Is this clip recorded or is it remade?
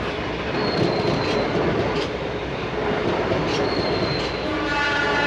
recorded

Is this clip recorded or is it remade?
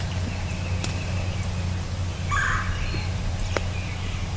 remade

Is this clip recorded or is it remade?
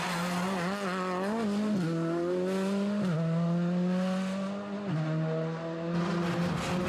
recorded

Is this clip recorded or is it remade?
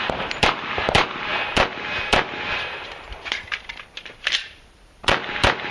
remade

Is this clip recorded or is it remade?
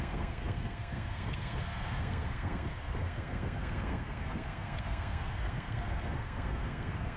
remade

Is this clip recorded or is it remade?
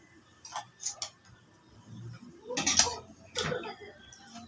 recorded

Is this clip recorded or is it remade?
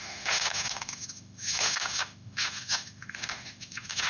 remade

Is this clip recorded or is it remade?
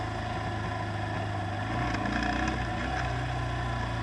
recorded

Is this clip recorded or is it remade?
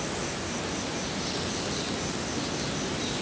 recorded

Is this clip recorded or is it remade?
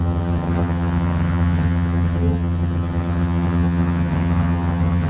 remade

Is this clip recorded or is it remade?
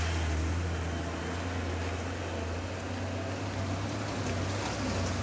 recorded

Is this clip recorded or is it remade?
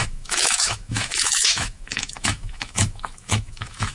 remade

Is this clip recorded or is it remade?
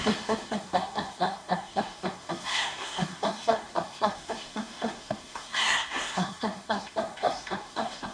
remade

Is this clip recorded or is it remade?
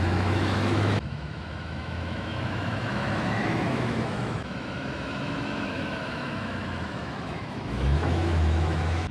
remade